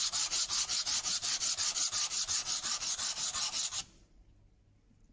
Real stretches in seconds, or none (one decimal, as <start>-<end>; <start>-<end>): 0.0-5.1